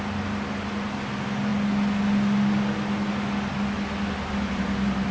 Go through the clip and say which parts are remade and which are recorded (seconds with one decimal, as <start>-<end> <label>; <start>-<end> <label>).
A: 0.0-5.1 recorded